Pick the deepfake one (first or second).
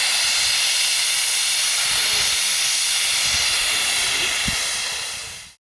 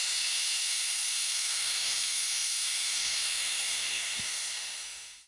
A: second